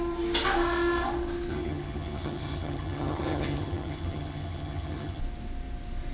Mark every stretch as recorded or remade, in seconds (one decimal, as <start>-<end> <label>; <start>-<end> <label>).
0.0-1.5 recorded; 1.5-5.2 remade; 5.2-6.1 recorded